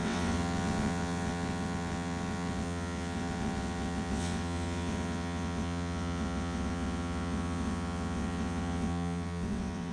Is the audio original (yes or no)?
no